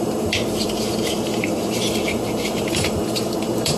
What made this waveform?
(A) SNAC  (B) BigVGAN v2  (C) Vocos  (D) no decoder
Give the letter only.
B